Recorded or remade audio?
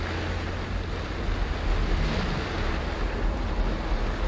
recorded